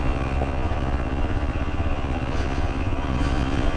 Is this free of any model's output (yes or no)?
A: no